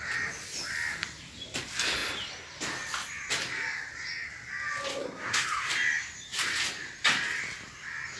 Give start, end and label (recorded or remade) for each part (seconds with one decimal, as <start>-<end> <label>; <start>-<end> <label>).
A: 0.0-5.0 recorded; 5.0-5.7 remade; 5.7-8.2 recorded